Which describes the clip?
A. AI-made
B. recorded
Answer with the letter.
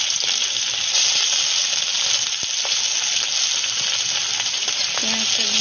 B